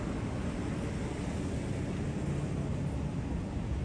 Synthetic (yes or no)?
no